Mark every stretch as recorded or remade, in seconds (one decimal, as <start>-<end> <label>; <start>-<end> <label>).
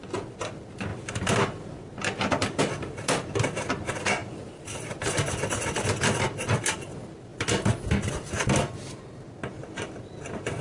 0.0-7.3 remade; 7.3-7.8 recorded; 7.8-8.6 remade; 8.6-9.5 recorded; 9.5-10.6 remade